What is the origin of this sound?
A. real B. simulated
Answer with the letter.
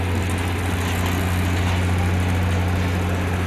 A